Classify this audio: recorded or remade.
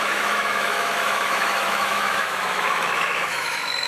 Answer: remade